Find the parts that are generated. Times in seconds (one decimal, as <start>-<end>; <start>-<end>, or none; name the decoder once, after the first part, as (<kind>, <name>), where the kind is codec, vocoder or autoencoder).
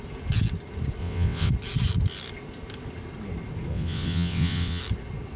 1.0-1.5 (vocoder, WaveNeXt); 3.7-4.8